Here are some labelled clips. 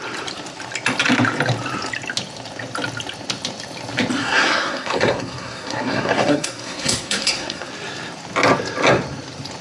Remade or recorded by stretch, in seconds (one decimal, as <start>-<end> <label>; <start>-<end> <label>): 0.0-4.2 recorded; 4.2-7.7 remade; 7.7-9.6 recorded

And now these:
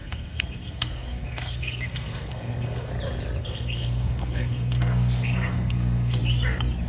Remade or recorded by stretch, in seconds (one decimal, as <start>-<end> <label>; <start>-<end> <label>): 0.0-2.9 remade; 2.9-3.4 recorded; 3.4-6.2 remade; 6.2-6.9 recorded

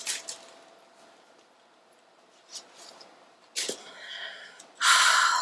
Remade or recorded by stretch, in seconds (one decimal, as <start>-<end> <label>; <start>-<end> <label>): 0.0-3.8 recorded; 3.8-4.6 remade; 4.6-5.4 recorded

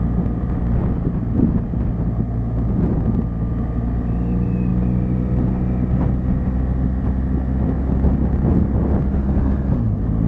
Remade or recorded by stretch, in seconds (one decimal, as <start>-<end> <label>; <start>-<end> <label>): 0.0-10.3 recorded

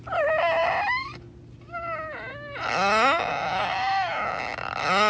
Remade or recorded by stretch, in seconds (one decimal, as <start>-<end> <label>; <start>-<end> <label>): 0.0-5.1 recorded

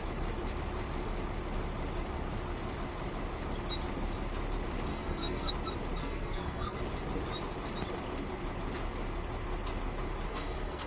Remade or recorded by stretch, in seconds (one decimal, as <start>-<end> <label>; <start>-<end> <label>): 0.0-4.9 recorded; 4.9-5.5 remade; 5.5-6.0 recorded; 6.0-6.8 remade; 6.8-10.3 recorded; 10.3-10.9 remade

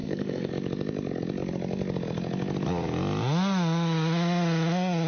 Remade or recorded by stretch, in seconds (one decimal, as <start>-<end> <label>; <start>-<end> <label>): 0.0-0.5 remade; 0.5-5.1 recorded